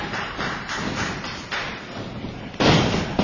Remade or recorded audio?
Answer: recorded